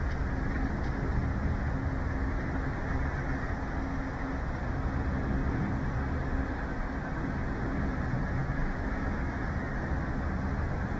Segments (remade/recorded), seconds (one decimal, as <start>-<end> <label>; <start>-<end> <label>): 0.0-8.4 recorded; 8.4-9.4 remade; 9.4-11.0 recorded